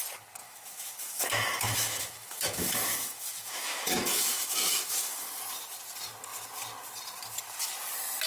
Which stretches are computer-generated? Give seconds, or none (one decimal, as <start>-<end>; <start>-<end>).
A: 0.4-5.4